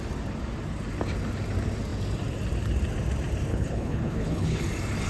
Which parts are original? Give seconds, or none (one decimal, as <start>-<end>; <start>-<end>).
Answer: 0.0-3.5; 4.6-5.1